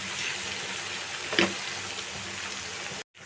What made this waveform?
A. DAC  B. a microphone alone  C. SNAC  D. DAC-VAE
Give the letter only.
B